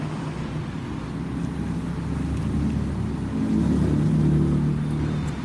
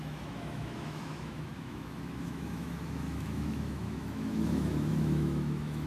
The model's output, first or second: second